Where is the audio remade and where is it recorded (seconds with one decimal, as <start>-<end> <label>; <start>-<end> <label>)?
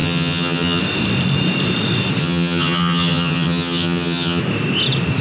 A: 0.0-0.8 remade; 0.8-2.2 recorded; 2.2-4.4 remade; 4.4-5.2 recorded